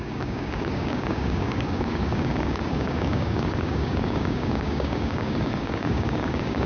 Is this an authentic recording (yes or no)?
no